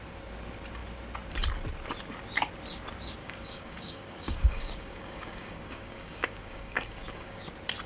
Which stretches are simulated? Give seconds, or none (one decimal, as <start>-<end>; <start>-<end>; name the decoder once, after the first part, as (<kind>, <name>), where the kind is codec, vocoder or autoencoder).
3.2-7.5 (codec, DAC)